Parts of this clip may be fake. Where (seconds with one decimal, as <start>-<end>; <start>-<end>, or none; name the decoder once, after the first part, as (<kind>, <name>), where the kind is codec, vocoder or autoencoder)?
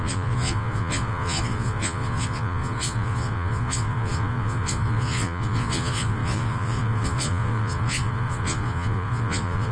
0.0-9.7 (vocoder, Vocos)